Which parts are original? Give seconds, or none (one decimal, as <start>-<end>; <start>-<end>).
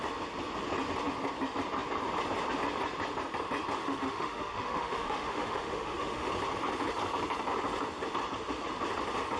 0.0-3.8; 6.3-9.4